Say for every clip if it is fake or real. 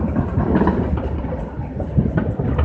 real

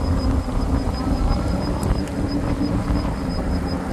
real